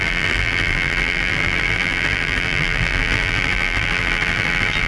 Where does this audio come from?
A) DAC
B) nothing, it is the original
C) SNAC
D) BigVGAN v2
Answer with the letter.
D